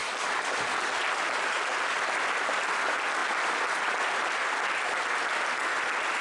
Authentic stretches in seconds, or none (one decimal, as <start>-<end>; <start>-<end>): 0.0-6.2